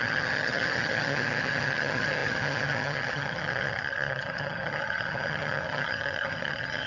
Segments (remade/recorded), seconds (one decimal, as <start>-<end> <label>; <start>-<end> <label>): 0.0-6.9 remade